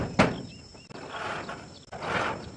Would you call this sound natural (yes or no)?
yes